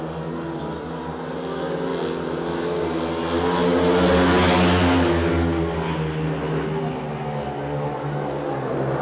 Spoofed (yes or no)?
no